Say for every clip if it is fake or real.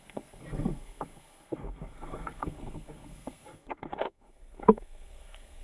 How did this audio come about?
fake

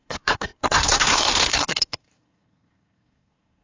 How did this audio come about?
fake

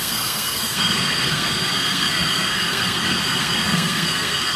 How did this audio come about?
fake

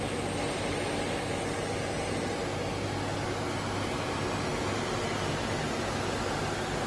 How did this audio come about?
real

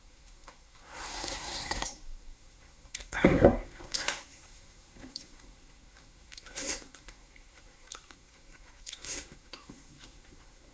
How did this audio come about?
fake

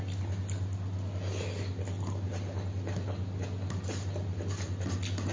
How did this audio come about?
real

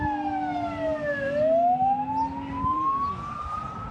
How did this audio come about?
real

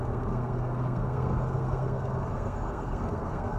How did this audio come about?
fake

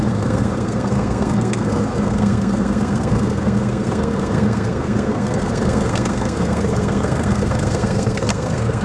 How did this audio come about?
fake